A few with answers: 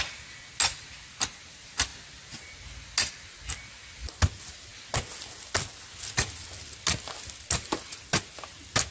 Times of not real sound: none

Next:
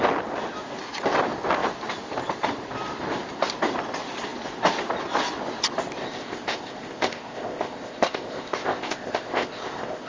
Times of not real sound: 6.0-10.1 (codec, ZipCodec)

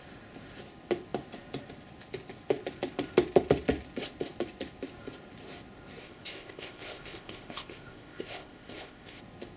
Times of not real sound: 6.0-9.2 (codec, ZipCodec)

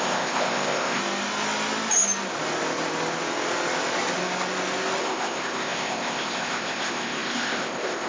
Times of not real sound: 0.0-1.0 (codec, ZipCodec); 5.0-8.1

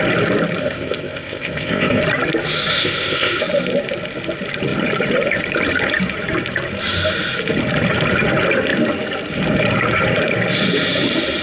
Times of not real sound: 0.6-2.0 (codec, ZipCodec); 2.7-3.4

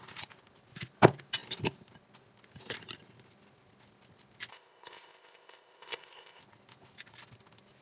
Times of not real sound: 4.5-6.4 (codec, ZipCodec)

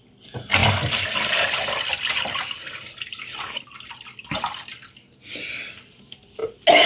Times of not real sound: none

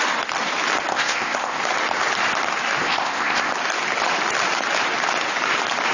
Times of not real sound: 0.9-1.6 (codec, ZipCodec); 2.8-3.5